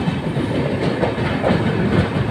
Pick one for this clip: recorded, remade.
recorded